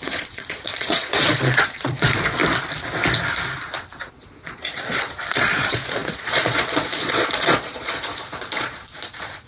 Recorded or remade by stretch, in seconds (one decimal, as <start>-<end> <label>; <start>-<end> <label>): 0.0-2.4 remade; 2.4-4.1 recorded; 4.1-9.5 remade